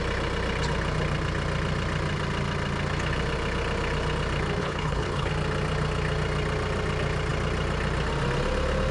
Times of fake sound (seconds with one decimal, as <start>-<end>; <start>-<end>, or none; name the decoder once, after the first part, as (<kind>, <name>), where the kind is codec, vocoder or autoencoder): 4.6-5.3 (codec, HILCodec)